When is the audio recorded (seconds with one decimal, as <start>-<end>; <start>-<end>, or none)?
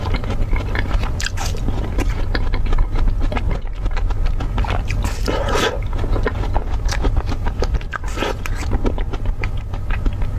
0.0-6.6; 8.5-10.4